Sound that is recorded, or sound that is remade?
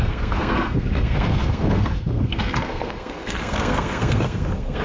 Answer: remade